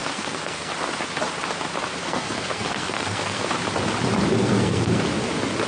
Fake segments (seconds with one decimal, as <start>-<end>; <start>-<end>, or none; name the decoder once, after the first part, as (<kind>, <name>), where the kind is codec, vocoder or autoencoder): 0.0-0.7 (codec, SNAC); 2.0-3.5; 4.4-5.0